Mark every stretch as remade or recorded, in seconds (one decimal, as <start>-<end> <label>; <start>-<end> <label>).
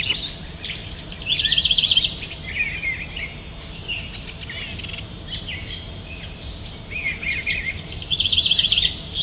0.0-9.2 recorded